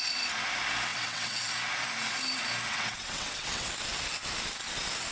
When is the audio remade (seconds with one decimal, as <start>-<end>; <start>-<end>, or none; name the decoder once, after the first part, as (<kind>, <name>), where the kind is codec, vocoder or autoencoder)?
0.9-1.5 (vocoder, WaveNeXt); 2.7-3.7